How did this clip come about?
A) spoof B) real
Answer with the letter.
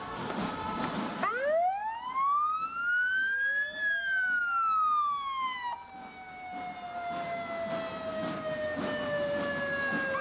B